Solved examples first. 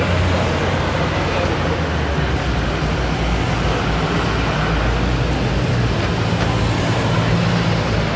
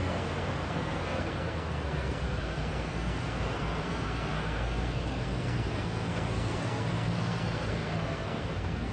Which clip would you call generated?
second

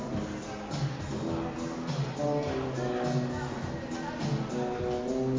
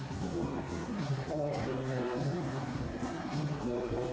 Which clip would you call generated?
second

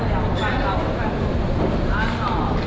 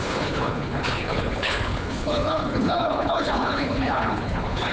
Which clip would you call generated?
second